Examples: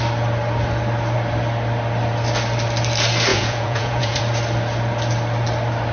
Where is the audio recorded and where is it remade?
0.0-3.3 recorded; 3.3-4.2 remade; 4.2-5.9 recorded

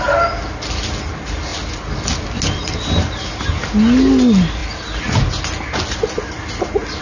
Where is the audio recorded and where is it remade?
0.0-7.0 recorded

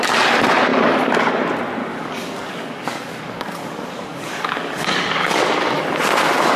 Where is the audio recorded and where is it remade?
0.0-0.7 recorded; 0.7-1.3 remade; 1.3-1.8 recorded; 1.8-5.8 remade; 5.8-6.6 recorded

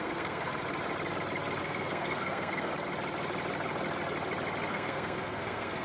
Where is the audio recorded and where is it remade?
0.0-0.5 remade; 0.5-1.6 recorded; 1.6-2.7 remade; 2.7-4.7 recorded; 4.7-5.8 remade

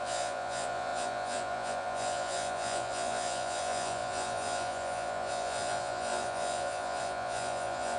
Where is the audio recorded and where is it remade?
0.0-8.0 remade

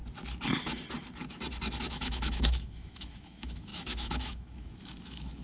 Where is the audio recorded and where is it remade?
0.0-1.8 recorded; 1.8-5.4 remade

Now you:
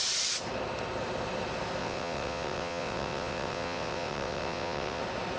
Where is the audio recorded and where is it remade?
0.0-1.8 recorded; 1.8-5.0 remade; 5.0-5.4 recorded